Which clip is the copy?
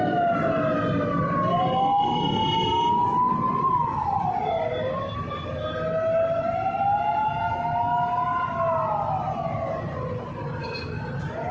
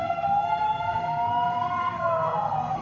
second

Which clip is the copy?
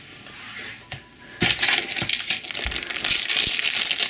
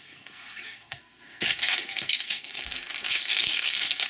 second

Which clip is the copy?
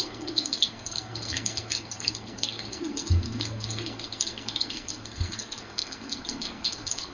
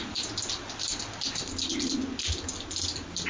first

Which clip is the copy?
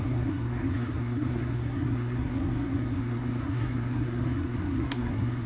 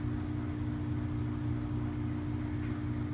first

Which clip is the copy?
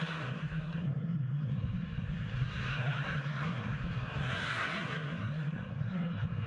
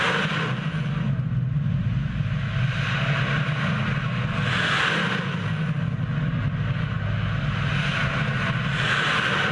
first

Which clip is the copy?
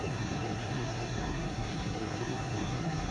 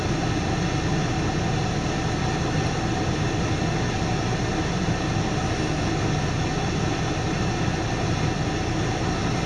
first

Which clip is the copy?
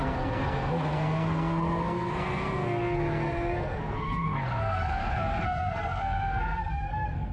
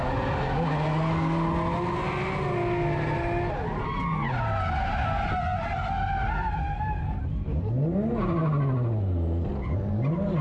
first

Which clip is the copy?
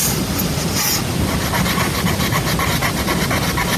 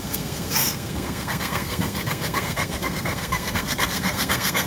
second